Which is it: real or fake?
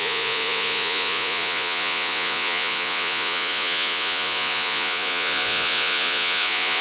fake